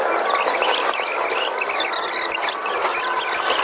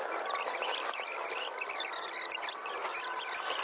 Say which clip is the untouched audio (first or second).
first